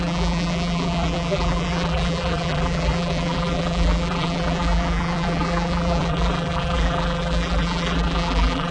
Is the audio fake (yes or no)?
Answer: yes